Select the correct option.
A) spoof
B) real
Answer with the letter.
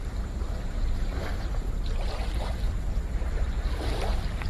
A